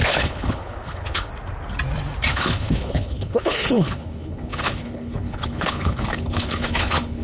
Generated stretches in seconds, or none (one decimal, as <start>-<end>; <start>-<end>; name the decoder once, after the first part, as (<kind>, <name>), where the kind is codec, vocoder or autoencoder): 0.0-1.3 (codec, HILCodec); 2.3-7.2